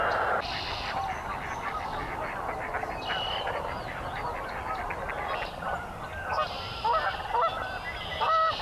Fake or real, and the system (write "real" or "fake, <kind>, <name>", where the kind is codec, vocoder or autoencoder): real